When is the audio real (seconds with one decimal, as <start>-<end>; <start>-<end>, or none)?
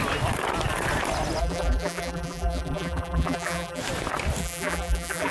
0.0-1.4; 3.8-4.4